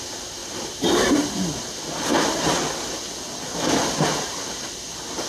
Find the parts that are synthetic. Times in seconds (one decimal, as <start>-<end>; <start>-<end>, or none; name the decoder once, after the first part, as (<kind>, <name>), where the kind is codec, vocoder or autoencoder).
0.4-1.1 (vocoder, BigVGAN v2)